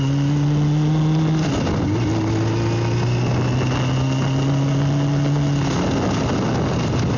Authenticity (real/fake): real